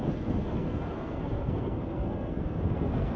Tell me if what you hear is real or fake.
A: fake